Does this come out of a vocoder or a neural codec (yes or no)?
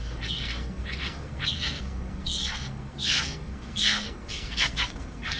yes